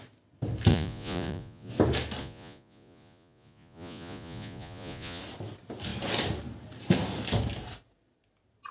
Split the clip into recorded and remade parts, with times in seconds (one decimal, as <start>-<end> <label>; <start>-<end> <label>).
0.0-0.7 recorded; 0.7-1.7 remade; 1.7-2.2 recorded; 2.2-5.2 remade; 5.2-8.7 recorded